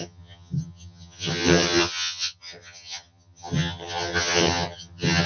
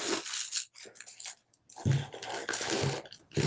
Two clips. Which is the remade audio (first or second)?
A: first